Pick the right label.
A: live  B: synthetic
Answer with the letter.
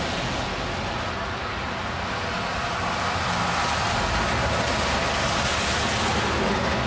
A